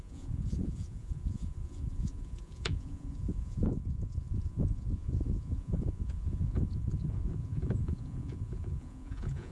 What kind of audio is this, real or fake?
fake